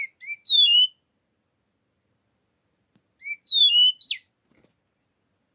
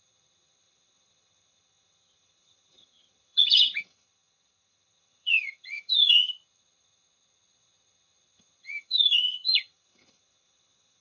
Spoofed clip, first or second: second